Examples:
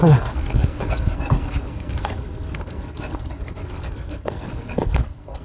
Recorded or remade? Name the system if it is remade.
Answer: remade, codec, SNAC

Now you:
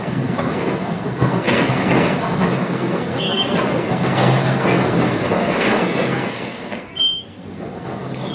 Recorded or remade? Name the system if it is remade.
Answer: remade, codec, SNAC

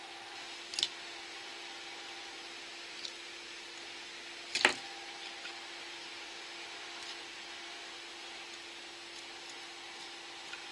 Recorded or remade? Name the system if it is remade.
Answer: recorded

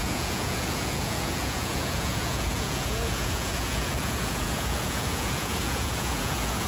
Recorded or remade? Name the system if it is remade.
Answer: remade, vocoder, Vocos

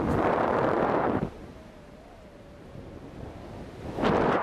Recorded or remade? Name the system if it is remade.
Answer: recorded